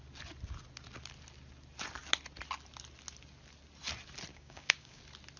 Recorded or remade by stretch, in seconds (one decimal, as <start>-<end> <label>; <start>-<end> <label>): 0.0-4.3 recorded; 4.3-5.0 remade; 5.0-5.4 recorded